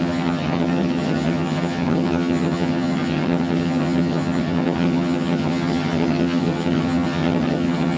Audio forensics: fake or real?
fake